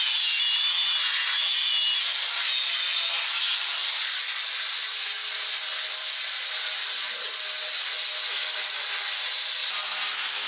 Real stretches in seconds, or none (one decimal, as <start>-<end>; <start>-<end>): 0.0-10.5